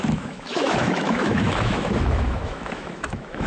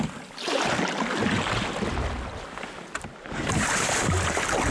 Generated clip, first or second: first